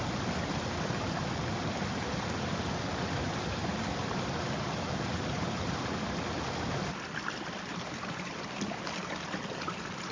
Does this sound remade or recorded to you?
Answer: recorded